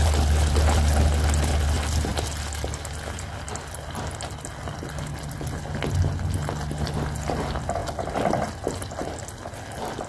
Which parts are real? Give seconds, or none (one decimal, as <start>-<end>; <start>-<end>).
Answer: 0.0-10.1